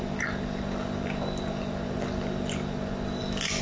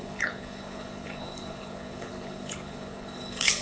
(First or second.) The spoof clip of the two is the second